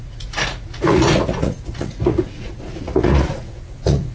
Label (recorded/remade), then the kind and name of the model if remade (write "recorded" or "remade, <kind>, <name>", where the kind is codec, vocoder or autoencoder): remade, vocoder, Vocos